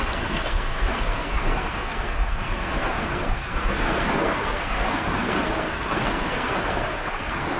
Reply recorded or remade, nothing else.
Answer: remade